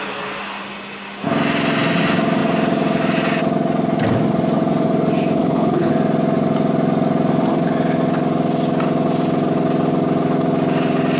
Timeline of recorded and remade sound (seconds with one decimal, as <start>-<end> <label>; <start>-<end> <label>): 0.0-5.4 recorded; 5.4-5.9 remade; 5.9-11.2 recorded